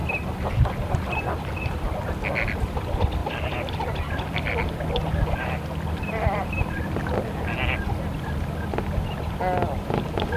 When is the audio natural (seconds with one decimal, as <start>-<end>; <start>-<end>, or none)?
1.2-3.2; 4.7-10.4